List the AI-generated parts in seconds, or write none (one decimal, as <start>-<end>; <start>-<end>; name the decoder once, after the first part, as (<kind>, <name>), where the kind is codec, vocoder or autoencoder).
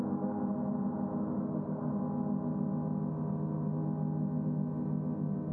0.0-0.4 (codec, SNAC); 1.4-1.9